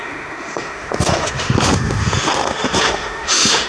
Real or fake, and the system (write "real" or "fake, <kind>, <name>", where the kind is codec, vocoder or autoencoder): fake, autoencoder, DAC-VAE